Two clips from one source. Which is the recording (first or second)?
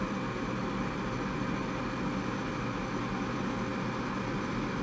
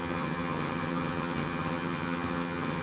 first